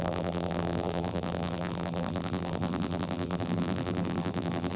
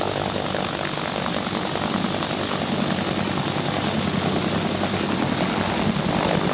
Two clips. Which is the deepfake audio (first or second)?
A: first